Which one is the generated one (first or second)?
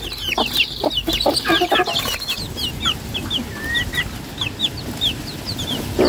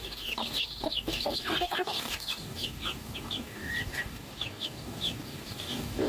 second